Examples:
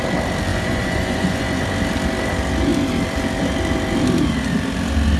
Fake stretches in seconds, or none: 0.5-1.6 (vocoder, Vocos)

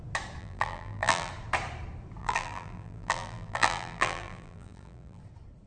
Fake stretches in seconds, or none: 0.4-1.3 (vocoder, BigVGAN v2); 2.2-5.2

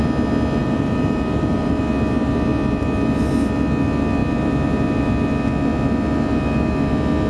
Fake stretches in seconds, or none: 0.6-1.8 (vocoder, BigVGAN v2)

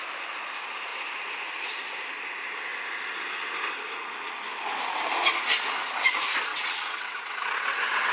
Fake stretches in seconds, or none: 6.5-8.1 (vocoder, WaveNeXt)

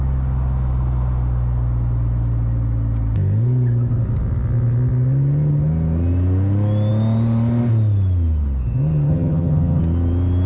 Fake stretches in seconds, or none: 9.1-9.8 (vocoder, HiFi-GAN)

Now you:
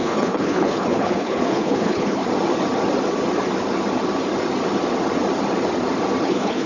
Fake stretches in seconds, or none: 0.0-2.2 (codec, HILCodec); 6.2-6.7

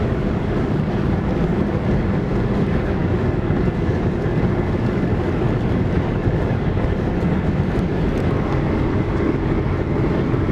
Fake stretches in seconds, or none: 0.0-10.5 (codec, DAC)

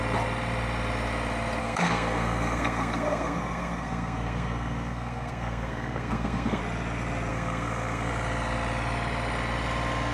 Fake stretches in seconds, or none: 1.6-6.6 (codec, SNAC); 7.3-8.1